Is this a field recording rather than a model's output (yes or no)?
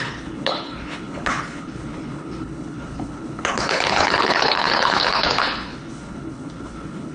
no